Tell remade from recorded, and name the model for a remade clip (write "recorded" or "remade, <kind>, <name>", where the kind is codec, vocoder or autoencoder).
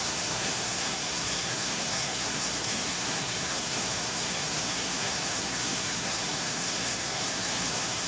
remade, codec, SNAC